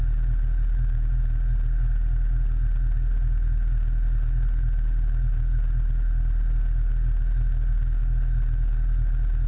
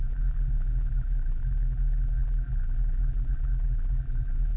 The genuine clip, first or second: first